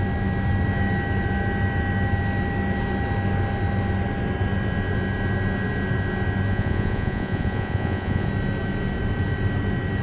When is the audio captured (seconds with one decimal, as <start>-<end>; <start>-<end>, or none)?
0.0-6.5; 8.3-10.0